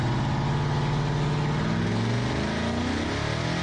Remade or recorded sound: recorded